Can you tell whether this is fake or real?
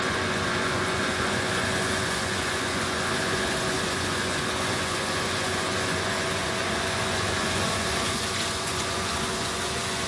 fake